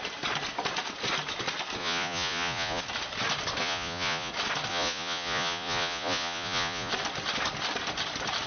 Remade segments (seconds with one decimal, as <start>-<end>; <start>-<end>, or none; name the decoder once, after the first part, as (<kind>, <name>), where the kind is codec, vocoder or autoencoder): 1.8-2.8 (vocoder, Vocos); 3.6-4.3; 4.7-6.9